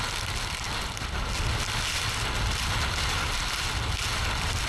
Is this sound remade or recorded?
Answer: recorded